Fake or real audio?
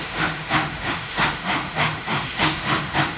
fake